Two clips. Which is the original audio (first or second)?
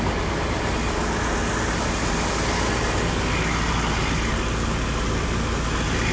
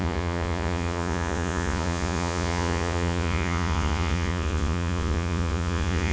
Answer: first